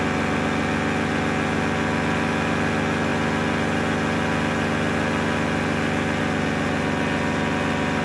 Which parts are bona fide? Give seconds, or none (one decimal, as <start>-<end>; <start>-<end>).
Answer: 0.0-8.0

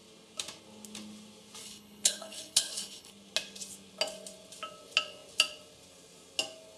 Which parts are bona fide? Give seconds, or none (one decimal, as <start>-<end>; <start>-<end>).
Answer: 0.0-1.6; 3.1-6.8